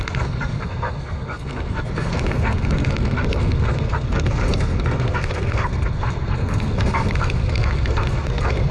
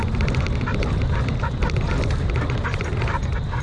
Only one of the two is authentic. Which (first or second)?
second